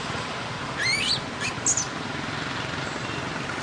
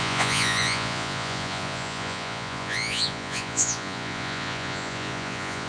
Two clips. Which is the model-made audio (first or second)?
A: second